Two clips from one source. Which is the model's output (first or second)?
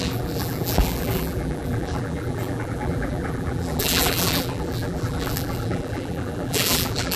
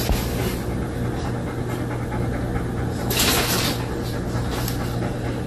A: first